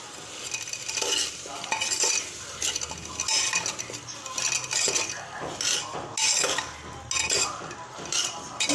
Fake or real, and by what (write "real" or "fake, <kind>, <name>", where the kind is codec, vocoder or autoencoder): real